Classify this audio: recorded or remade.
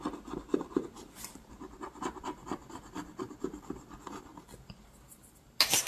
recorded